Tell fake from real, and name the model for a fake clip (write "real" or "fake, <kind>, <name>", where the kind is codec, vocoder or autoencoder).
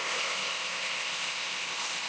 fake, codec, ZipCodec